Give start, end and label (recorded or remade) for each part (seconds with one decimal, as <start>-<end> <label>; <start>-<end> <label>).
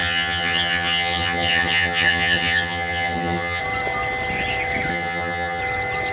0.0-3.6 remade; 3.6-4.9 recorded; 4.9-5.6 remade; 5.6-6.1 recorded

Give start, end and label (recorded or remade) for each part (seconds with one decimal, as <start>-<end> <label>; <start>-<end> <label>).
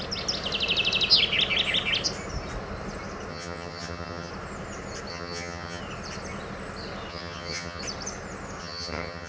0.0-3.3 recorded; 3.3-4.3 remade; 4.3-5.1 recorded; 5.1-5.8 remade; 5.8-7.1 recorded; 7.1-7.8 remade; 7.8-8.6 recorded; 8.6-9.3 remade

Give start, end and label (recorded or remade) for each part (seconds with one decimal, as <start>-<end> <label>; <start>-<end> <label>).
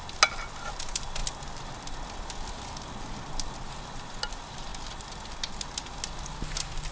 0.0-6.9 recorded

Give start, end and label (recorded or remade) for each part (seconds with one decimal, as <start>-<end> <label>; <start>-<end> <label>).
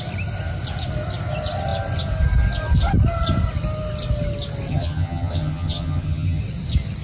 0.0-4.7 recorded; 4.7-6.4 remade; 6.4-7.0 recorded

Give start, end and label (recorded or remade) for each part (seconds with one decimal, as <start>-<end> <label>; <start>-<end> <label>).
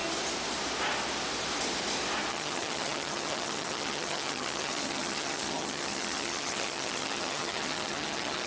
0.0-2.3 recorded; 2.3-8.5 remade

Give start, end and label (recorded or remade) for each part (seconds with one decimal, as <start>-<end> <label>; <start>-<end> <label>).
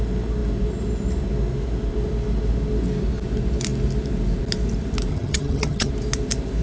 0.0-5.1 recorded; 5.1-5.9 remade; 5.9-6.6 recorded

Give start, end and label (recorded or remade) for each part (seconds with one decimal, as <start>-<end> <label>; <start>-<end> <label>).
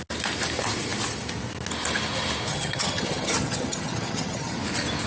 0.0-2.5 recorded; 2.5-4.6 remade; 4.6-5.1 recorded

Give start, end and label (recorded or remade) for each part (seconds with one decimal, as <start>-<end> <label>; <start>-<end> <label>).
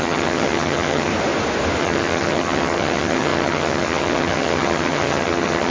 0.0-1.1 remade; 1.1-1.8 recorded; 1.8-5.7 remade